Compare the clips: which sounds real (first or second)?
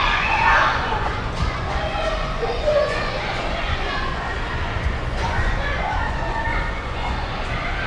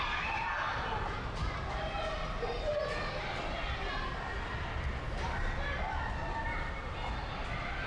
second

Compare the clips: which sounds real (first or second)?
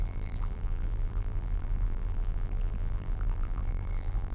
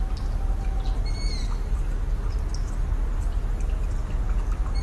second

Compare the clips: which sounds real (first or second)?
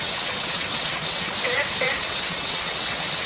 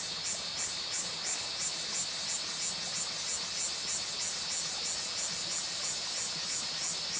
second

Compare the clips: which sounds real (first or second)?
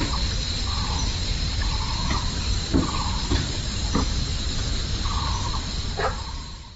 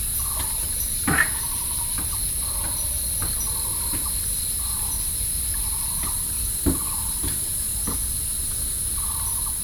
second